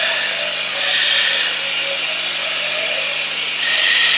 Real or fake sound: real